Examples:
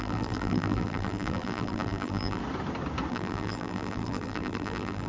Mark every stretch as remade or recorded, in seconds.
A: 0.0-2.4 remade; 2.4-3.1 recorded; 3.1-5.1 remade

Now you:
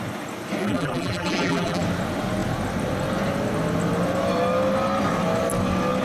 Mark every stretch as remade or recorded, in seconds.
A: 0.0-0.6 recorded; 0.6-1.8 remade; 1.8-6.0 recorded

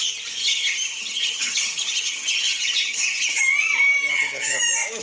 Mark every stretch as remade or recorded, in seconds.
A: 0.0-0.4 recorded; 0.4-3.4 remade; 3.4-4.1 recorded; 4.1-4.6 remade; 4.6-5.0 recorded

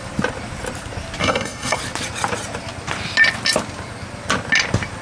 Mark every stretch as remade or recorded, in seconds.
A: 0.0-1.2 recorded; 1.2-1.8 remade; 1.8-5.0 recorded